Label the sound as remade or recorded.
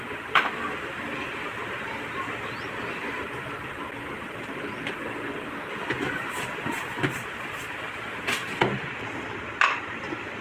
remade